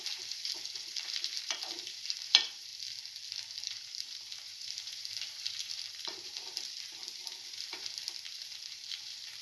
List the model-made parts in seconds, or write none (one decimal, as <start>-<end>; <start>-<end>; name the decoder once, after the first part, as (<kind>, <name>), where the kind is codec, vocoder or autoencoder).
0.0-2.7 (vocoder, BigVGAN v2); 3.7-7.0; 7.6-9.4